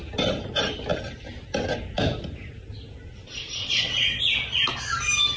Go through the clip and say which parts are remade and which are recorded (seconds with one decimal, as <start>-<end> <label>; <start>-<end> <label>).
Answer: 0.0-3.6 recorded; 3.6-4.2 remade; 4.2-5.4 recorded